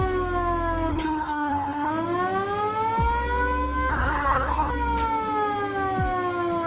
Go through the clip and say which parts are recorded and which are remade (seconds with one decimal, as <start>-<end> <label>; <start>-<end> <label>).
0.0-0.9 recorded; 0.9-1.9 remade; 1.9-3.9 recorded; 3.9-4.7 remade; 4.7-6.7 recorded

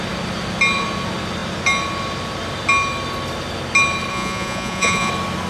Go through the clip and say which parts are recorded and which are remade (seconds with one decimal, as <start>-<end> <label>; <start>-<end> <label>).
0.0-4.1 recorded; 4.1-5.1 remade; 5.1-5.5 recorded